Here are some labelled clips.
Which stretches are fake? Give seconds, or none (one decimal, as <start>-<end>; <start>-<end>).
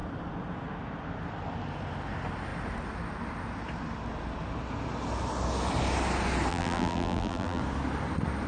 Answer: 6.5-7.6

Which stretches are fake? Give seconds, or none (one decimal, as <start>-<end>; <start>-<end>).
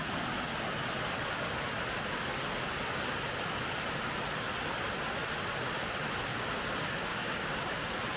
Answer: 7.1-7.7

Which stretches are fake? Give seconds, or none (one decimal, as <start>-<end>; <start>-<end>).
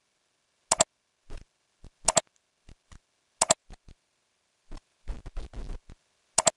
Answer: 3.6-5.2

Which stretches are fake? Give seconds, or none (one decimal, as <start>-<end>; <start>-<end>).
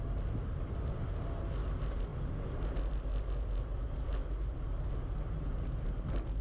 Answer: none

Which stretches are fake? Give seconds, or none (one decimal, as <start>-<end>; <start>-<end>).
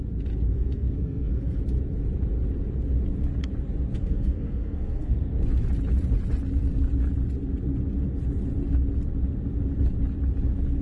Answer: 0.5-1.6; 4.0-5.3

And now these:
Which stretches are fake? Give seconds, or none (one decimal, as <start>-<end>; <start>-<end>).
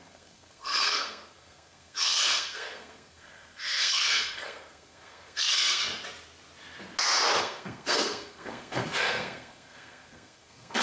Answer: 0.0-5.8; 7.4-10.8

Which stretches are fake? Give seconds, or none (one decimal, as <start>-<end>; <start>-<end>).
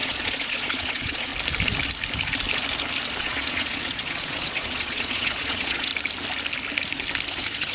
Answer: 0.0-1.3; 3.2-5.9; 7.3-7.7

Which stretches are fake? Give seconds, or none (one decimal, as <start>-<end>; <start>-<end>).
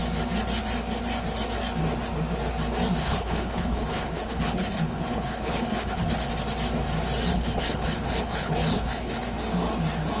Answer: 3.0-6.3; 7.3-9.2